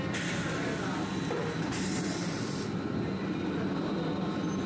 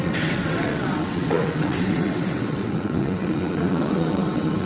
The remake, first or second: second